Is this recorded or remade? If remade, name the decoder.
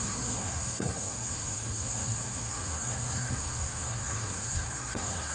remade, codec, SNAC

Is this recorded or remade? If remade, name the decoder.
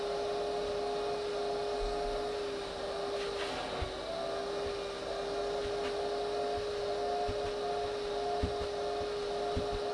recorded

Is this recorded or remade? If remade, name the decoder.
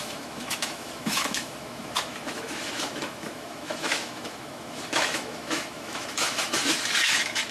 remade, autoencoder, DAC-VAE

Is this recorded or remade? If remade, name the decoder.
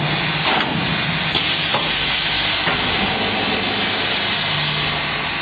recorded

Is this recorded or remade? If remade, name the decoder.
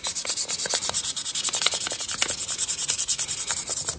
recorded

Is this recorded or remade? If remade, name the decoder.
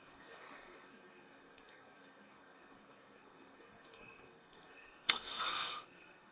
remade, codec, SNAC